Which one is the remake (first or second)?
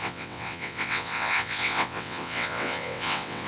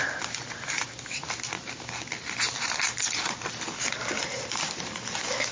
first